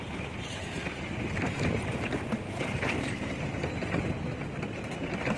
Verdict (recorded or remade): recorded